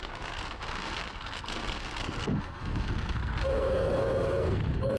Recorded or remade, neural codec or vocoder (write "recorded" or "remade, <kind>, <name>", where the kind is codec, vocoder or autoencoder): remade, codec, SNAC